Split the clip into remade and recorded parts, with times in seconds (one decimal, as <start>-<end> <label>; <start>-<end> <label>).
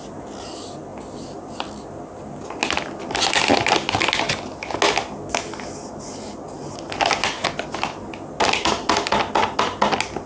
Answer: 0.0-10.3 recorded